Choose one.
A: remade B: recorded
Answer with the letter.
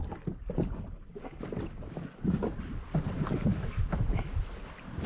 B